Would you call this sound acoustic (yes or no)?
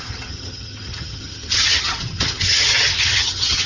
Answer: no